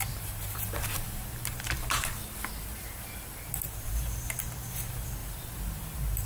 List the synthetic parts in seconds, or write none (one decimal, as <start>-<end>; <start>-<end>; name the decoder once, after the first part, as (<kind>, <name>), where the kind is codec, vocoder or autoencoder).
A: 0.0-2.2 (vocoder, BigVGAN v2); 3.6-6.3